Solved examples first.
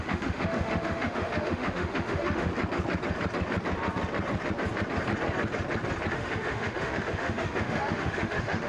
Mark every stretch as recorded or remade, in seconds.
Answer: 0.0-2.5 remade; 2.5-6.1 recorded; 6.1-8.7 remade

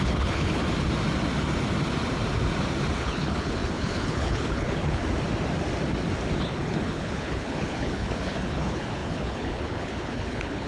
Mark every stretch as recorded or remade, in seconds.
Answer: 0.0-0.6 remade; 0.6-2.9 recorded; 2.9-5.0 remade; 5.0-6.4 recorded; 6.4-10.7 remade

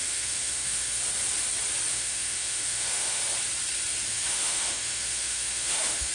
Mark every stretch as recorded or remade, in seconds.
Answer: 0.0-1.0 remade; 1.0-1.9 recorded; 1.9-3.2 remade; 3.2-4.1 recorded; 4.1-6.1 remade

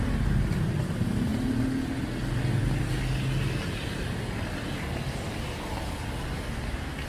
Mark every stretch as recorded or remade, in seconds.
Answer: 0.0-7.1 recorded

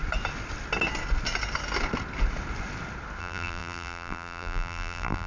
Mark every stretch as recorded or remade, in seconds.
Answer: 0.0-3.2 recorded; 3.2-5.3 remade